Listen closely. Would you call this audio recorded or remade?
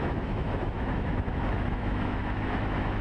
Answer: remade